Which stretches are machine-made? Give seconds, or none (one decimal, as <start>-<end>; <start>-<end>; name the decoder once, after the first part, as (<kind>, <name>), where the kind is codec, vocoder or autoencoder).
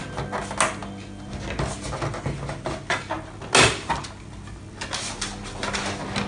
none